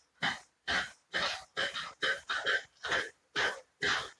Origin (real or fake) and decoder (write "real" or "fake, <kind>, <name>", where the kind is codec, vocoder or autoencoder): real